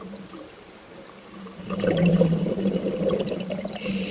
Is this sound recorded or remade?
remade